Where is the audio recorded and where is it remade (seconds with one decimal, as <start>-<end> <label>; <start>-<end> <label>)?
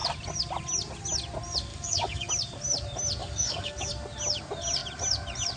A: 0.0-1.7 recorded; 1.7-2.3 remade; 2.3-3.2 recorded; 3.2-3.9 remade; 3.9-5.6 recorded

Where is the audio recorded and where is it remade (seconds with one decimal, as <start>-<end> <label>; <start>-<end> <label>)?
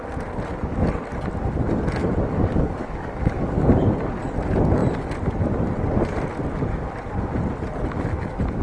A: 0.0-2.0 recorded; 2.0-3.6 remade; 3.6-8.6 recorded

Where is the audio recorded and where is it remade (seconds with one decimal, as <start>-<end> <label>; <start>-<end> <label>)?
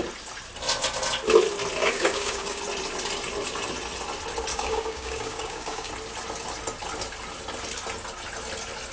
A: 0.0-1.8 recorded; 1.8-2.6 remade; 2.6-4.5 recorded; 4.5-5.9 remade; 5.9-8.9 recorded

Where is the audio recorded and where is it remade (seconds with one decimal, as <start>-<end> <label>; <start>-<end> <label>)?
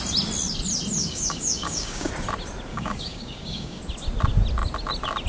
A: 0.0-1.0 recorded; 1.0-2.1 remade; 2.1-2.7 recorded; 2.7-3.8 remade; 3.8-5.3 recorded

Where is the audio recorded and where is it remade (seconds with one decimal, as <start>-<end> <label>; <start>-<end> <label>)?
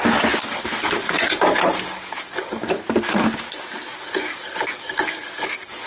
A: 0.0-0.4 recorded; 0.4-2.7 remade; 2.7-3.9 recorded; 3.9-5.9 remade